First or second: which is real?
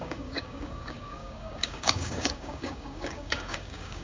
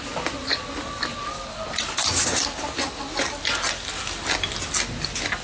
second